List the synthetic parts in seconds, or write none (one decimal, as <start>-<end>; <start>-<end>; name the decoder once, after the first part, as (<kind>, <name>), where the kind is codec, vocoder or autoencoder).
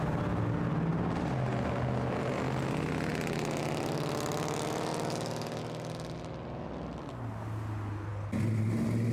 none